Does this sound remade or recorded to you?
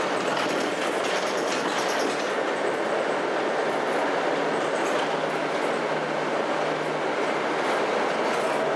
recorded